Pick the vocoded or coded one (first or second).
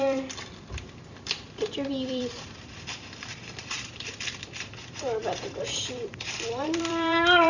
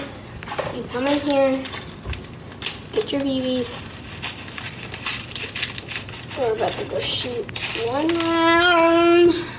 first